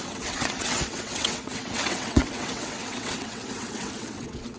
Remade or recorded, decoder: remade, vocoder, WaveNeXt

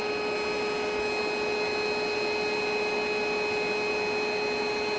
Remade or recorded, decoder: recorded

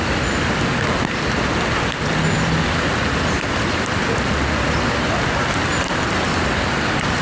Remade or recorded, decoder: recorded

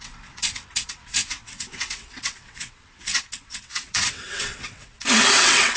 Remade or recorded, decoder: remade, vocoder, WaveNeXt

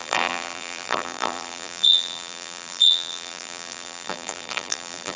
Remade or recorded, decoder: remade, vocoder, BigVGAN v2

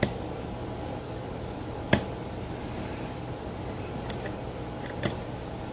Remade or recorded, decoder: recorded